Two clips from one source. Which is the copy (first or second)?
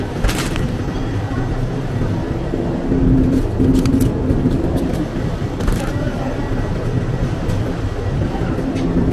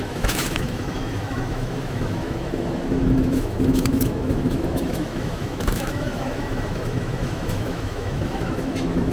second